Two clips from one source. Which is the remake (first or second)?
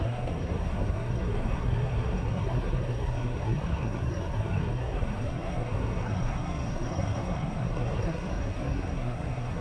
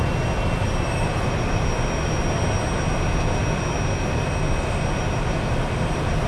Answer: first